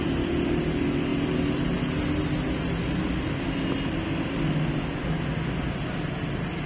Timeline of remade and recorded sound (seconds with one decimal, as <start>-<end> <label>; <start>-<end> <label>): 0.0-6.7 recorded